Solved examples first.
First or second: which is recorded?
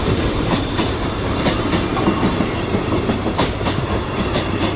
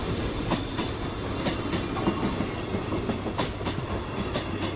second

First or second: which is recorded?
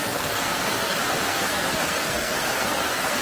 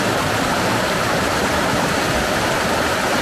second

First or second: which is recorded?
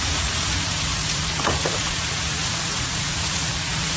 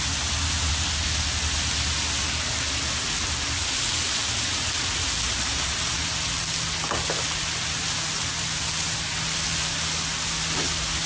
second